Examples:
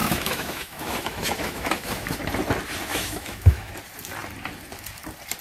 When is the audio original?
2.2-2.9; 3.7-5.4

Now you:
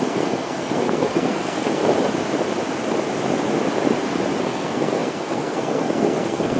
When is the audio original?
1.8-4.4

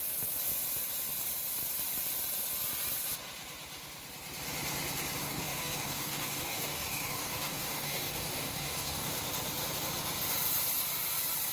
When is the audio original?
0.0-5.2; 9.1-11.5

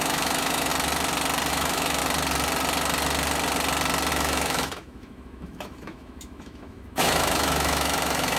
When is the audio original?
0.7-1.5; 2.0-4.1